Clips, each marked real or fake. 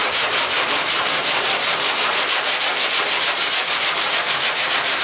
fake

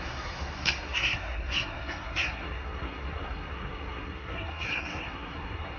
fake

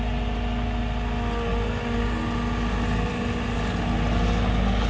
real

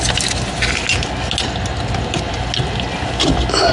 real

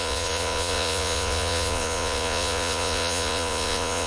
fake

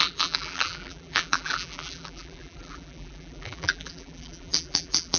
fake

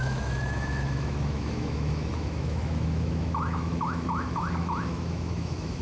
fake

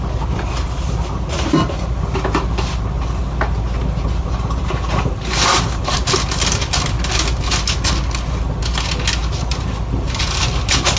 real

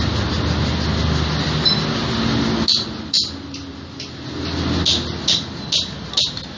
real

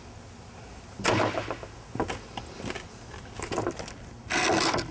real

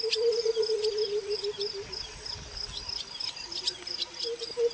real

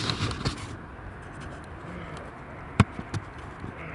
real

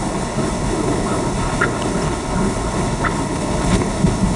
fake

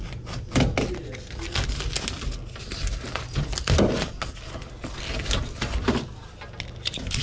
real